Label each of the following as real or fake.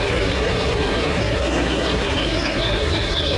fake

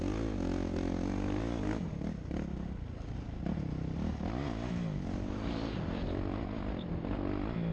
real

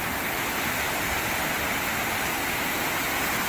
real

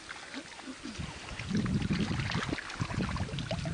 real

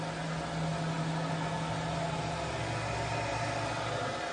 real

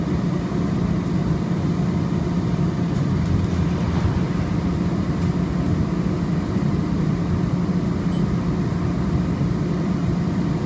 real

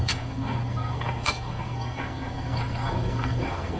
fake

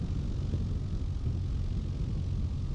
real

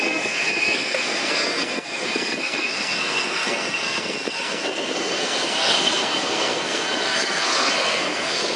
fake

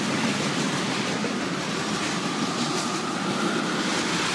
real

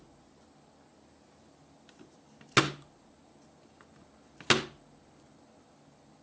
real